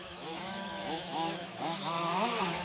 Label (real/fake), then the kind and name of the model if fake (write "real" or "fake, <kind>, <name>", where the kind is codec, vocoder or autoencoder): fake, autoencoder, DAC-VAE